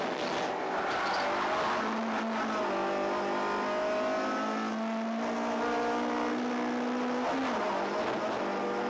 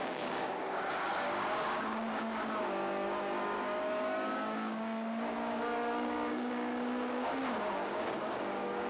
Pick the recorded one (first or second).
first